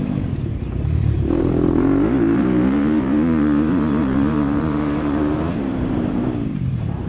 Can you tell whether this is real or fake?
fake